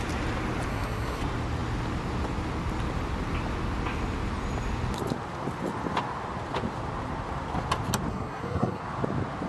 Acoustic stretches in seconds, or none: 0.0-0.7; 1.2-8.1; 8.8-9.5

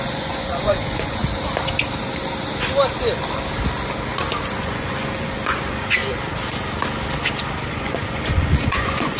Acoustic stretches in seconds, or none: 1.2-4.6; 6.0-7.7

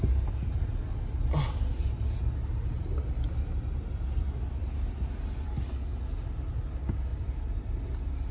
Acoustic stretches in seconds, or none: 0.0-8.3

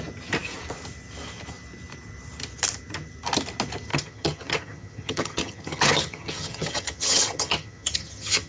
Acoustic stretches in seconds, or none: 0.0-3.9

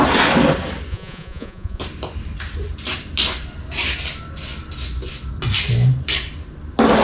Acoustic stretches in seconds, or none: 0.0-0.9; 1.8-7.0

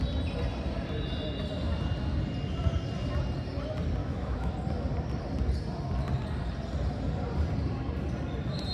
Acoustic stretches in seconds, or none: 0.0-4.0; 4.5-8.7

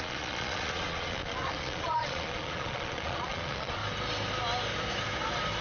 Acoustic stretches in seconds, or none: 3.8-5.6

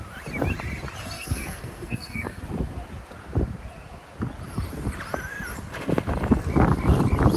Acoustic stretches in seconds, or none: 0.0-1.0; 2.4-7.4